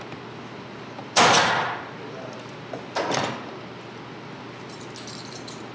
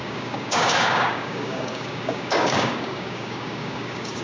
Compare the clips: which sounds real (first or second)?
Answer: first